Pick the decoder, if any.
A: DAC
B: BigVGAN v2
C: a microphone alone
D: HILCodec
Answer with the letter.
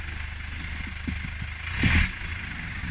C